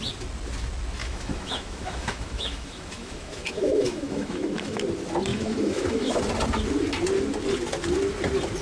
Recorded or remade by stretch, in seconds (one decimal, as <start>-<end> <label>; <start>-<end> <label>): 0.0-1.0 recorded; 1.0-4.8 remade; 4.8-5.3 recorded; 5.3-6.2 remade; 6.2-8.6 recorded